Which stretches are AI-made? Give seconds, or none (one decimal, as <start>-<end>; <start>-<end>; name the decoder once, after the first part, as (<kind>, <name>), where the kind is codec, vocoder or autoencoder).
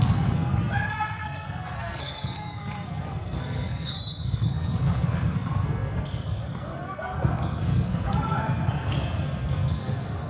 0.0-10.3 (codec, SNAC)